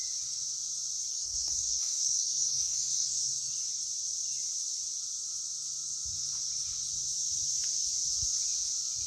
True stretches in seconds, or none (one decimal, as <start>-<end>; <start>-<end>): 0.0-1.1; 3.5-9.1